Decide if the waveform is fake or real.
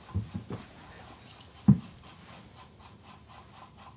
real